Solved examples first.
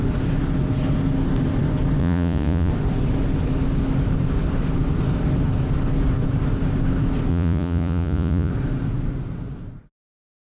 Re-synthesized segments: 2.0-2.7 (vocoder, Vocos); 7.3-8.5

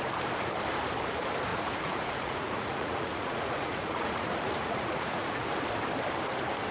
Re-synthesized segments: 1.5-5.5 (vocoder, Vocos)

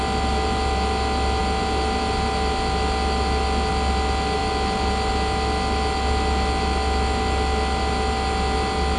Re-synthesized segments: none

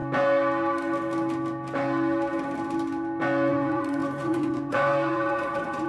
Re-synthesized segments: 3.5-5.9 (vocoder, Vocos)

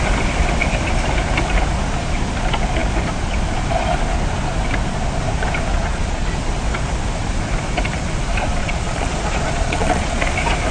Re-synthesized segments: 5.7-6.3 (vocoder, Vocos); 8.6-10.2

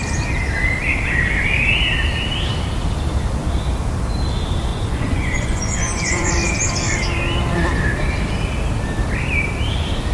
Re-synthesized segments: 4.7-6.3 (vocoder, Vocos)

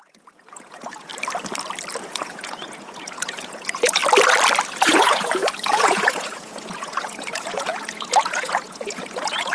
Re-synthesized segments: 0.0-1.1 (vocoder, Vocos); 2.0-4.0; 4.7-9.5

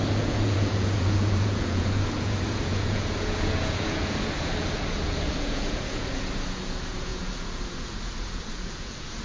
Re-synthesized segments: 0.0-9.2 (vocoder, Vocos)